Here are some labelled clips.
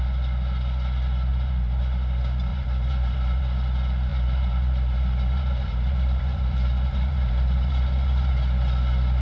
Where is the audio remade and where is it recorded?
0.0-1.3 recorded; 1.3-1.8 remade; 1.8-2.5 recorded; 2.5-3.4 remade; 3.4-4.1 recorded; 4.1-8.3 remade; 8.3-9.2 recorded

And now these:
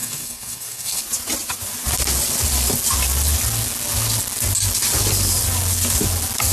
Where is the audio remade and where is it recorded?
0.0-1.0 remade; 1.0-6.5 recorded

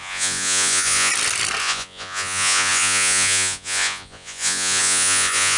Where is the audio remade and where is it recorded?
0.0-1.1 remade; 1.1-1.6 recorded; 1.6-5.6 remade

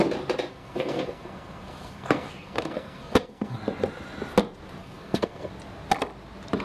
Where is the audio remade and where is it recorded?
0.0-0.5 recorded; 0.5-3.6 remade; 3.6-4.8 recorded; 4.8-5.5 remade; 5.5-6.6 recorded

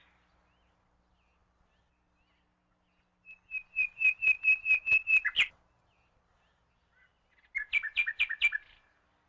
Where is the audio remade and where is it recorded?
0.0-9.3 recorded

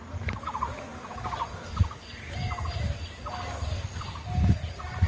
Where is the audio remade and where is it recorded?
0.0-5.1 recorded